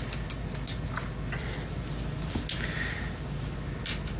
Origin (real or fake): real